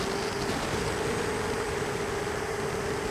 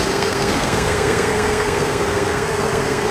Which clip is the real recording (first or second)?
first